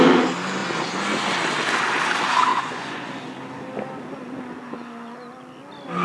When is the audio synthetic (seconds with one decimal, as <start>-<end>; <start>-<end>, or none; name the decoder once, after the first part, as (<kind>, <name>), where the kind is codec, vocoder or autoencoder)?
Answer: 2.5-3.1 (vocoder, Vocos)

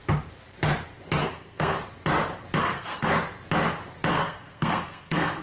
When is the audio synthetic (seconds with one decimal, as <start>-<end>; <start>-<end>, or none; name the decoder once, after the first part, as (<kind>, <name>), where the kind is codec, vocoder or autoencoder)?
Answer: 1.2-1.8 (codec, SNAC); 2.6-3.1; 4.1-5.4

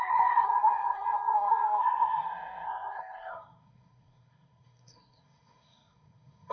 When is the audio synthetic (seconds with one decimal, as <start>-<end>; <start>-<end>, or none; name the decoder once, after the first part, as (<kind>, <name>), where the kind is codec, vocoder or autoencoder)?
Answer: 0.0-6.5 (codec, SNAC)

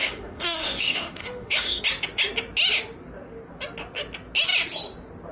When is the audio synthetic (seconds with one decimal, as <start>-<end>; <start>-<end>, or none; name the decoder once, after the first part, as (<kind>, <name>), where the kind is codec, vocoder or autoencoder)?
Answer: 0.0-1.8 (autoencoder, DAC-VAE)